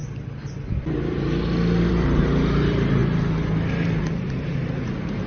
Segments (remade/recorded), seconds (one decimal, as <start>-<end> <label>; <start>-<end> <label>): 0.0-1.9 recorded; 1.9-3.0 remade; 3.0-4.0 recorded; 4.0-5.3 remade